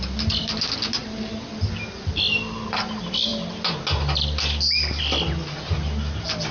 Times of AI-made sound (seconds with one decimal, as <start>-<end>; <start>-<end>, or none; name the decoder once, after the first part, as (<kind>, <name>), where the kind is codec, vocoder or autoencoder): none